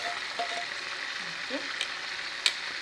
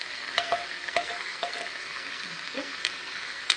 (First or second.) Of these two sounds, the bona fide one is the first